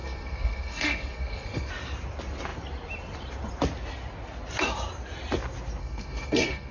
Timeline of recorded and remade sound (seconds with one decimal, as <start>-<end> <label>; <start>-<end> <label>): 0.0-1.7 remade; 1.7-5.8 recorded; 5.8-6.7 remade